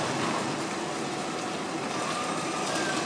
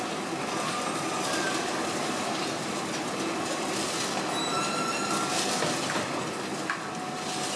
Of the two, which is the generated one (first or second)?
first